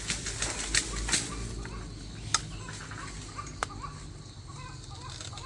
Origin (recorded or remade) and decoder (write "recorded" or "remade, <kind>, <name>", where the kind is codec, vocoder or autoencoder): recorded